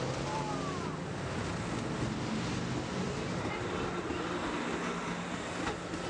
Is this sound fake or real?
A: real